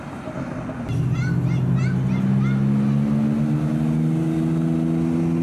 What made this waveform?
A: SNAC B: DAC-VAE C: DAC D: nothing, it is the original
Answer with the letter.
D